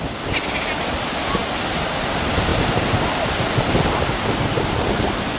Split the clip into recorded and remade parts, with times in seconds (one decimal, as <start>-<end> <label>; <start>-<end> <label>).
0.0-5.4 recorded